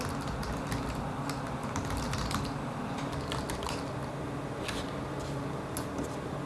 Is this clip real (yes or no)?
yes